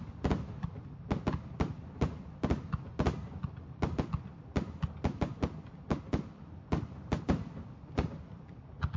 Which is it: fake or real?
real